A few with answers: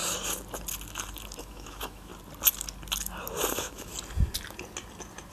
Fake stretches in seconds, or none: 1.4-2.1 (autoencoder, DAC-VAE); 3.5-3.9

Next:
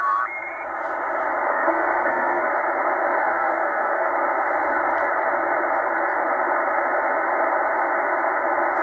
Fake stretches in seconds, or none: 1.5-2.4 (codec, SNAC); 3.2-4.1

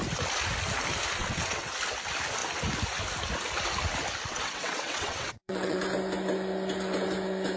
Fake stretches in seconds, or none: 1.2-1.8 (vocoder, WaveNeXt); 4.3-5.8

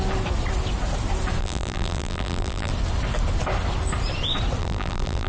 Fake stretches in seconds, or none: 1.4-2.7 (vocoder, BigVGAN v2); 4.6-5.3